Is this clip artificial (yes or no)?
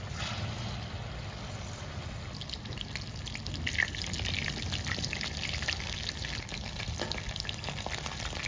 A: no